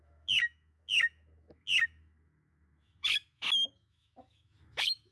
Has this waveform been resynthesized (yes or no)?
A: yes